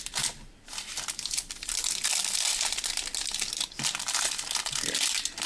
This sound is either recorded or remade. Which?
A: remade